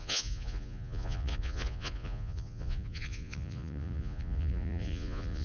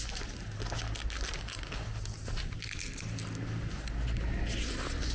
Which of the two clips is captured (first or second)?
second